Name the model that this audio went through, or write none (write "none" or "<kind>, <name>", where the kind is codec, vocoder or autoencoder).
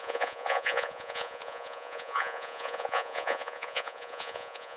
vocoder, Vocos